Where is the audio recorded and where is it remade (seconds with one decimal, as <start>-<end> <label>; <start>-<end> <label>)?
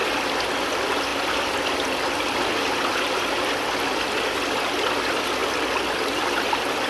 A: 0.0-6.9 recorded